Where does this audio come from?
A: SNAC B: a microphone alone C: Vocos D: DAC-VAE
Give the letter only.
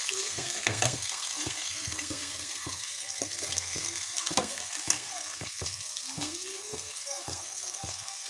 A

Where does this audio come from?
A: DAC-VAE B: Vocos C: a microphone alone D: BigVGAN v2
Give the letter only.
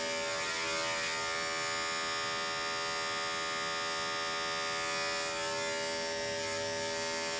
C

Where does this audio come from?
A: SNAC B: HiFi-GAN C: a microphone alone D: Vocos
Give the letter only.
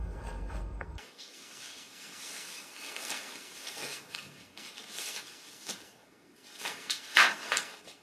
A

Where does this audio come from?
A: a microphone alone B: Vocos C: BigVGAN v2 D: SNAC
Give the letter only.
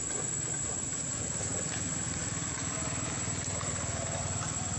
A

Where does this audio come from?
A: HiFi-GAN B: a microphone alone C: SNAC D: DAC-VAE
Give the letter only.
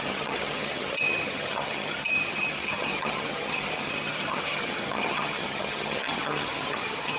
A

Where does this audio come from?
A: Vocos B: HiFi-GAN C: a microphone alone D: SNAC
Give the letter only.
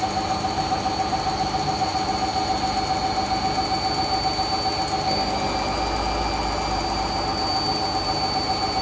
C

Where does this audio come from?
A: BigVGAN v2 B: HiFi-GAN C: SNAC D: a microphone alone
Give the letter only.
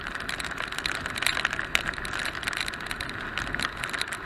D